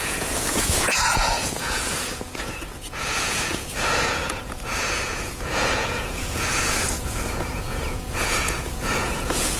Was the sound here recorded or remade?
remade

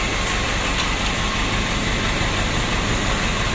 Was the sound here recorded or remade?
recorded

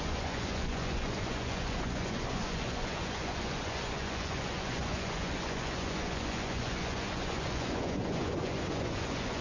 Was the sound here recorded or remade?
remade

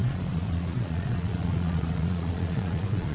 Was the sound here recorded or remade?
remade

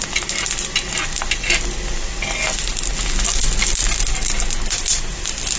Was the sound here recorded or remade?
recorded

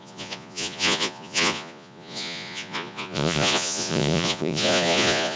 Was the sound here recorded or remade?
remade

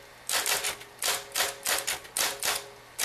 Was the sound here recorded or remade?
recorded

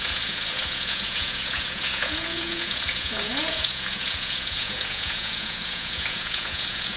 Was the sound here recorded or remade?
remade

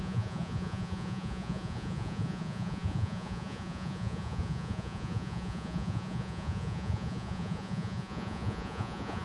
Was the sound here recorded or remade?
remade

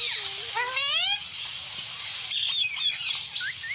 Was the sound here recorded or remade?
recorded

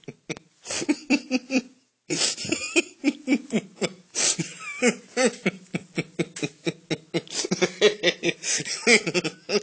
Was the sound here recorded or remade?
recorded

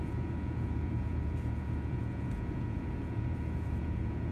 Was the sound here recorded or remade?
remade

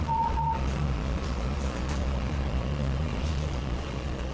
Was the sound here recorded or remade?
remade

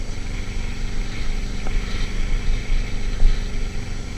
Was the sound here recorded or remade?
recorded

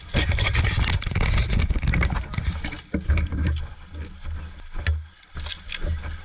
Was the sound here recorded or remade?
recorded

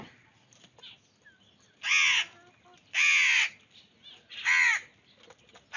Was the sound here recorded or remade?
recorded